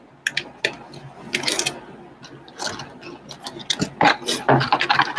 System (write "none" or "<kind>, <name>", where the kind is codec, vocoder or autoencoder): none